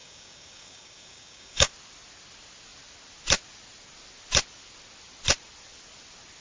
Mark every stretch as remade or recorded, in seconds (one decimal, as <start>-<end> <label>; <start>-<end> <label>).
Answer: 0.0-1.7 remade; 1.7-6.4 recorded